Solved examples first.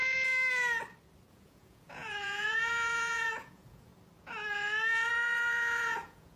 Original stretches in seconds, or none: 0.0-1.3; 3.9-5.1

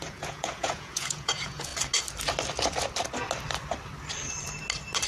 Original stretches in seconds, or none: 1.7-5.1

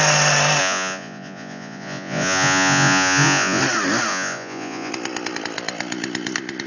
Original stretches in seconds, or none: 0.0-0.6; 3.6-4.1; 4.9-6.7

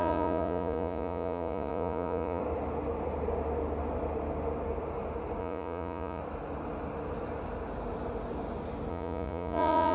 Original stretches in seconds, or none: 2.4-5.4; 6.2-8.9

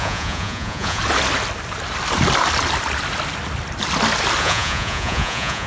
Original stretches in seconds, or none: 1.0-4.4

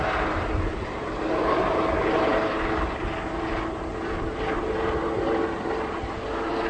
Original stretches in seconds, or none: 0.0-6.7

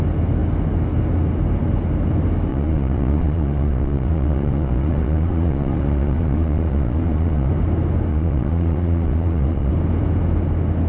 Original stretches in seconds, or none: 0.0-2.5; 7.5-8.1; 9.7-10.9